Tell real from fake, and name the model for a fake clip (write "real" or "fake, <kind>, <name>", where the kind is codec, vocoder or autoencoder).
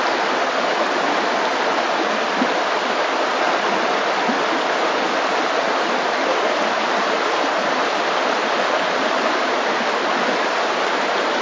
real